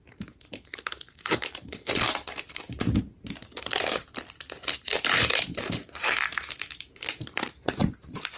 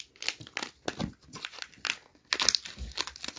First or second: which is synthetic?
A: first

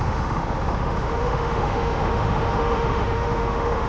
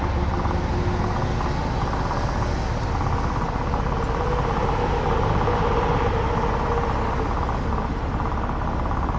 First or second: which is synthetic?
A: first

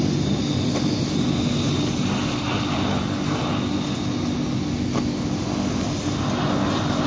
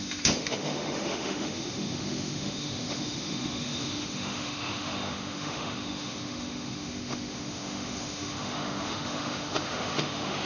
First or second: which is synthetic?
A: second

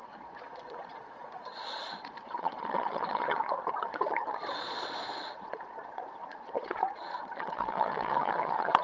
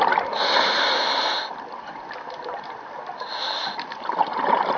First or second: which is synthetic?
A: first